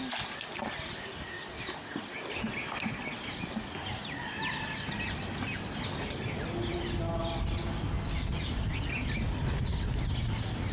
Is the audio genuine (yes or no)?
yes